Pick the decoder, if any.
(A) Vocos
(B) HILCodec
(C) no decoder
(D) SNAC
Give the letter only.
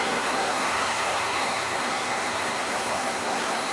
D